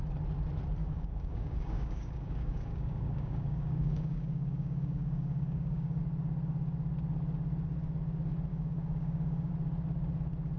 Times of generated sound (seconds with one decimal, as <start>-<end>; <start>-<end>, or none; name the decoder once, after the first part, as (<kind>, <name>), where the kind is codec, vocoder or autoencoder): 0.8-6.0 (codec, DAC); 8.5-9.5